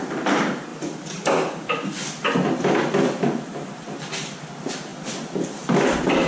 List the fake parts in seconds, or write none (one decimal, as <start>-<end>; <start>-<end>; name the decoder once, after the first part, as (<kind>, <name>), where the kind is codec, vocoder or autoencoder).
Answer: 0.7-4.5 (vocoder, BigVGAN v2)